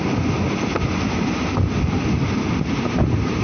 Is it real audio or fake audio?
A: real